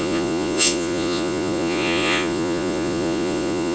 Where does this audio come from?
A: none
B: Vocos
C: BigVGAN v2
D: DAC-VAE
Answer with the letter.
B